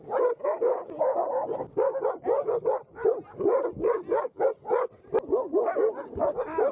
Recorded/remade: recorded